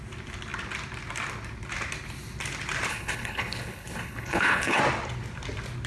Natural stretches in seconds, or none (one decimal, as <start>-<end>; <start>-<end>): 0.0-2.9; 4.8-5.9

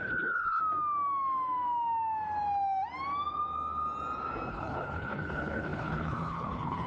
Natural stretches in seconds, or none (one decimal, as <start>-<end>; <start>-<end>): 0.6-4.5